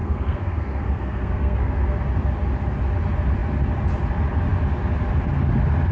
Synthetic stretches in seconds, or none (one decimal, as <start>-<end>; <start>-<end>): 0.0-2.0